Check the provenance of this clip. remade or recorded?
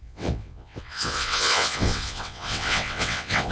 remade